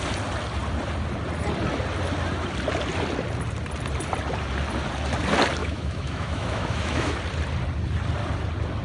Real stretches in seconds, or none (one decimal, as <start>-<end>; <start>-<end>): 0.0-5.6; 7.2-8.8